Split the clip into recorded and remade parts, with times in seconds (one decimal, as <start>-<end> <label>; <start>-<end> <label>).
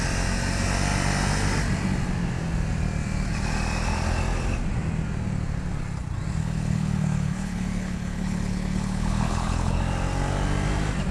0.0-6.4 recorded; 6.4-9.8 remade; 9.8-11.1 recorded